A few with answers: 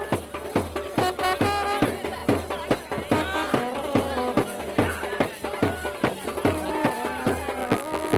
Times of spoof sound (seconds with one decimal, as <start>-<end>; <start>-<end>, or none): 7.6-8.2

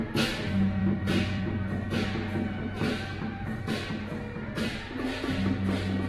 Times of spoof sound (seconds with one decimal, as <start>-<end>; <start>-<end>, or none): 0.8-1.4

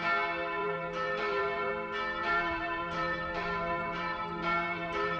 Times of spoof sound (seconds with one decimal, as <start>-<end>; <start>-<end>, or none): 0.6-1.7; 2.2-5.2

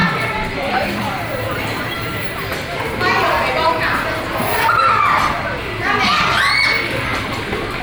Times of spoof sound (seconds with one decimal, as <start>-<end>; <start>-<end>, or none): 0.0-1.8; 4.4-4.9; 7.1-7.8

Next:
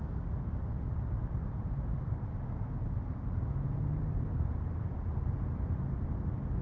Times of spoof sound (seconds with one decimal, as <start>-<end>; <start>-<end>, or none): none